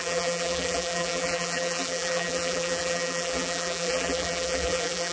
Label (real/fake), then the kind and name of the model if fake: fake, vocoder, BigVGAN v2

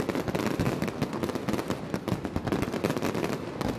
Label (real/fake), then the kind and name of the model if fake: real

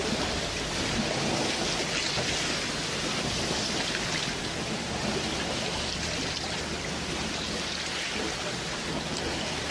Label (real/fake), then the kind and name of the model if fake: real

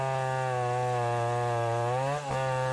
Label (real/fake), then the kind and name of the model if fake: real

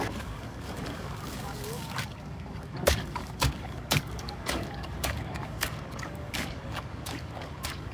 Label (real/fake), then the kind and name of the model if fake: fake, codec, DAC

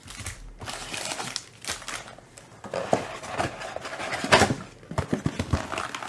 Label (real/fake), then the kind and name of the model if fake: real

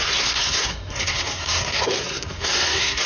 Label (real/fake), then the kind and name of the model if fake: fake, codec, SNAC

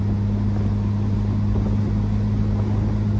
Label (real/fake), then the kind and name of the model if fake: real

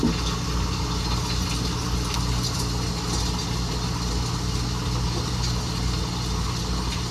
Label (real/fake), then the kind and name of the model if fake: real